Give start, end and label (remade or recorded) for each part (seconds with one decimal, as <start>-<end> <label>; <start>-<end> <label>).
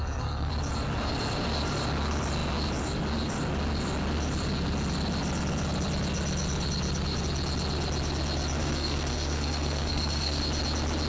0.0-0.5 remade; 0.5-8.6 recorded; 8.6-10.4 remade; 10.4-11.1 recorded